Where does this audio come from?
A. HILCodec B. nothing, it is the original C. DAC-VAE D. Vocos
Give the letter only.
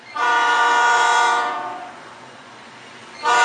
D